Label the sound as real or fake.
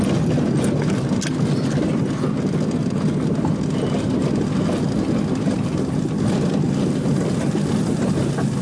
real